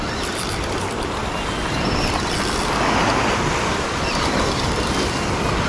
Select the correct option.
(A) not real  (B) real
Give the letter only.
B